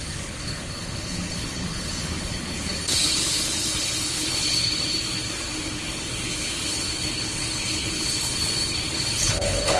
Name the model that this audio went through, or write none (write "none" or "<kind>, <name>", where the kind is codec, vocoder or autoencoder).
codec, HILCodec